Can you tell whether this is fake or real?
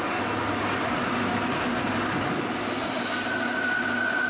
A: real